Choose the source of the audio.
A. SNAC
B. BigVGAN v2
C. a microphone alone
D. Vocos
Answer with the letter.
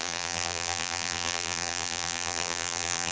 B